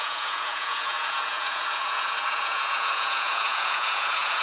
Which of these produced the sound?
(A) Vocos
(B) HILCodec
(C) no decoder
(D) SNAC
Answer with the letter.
A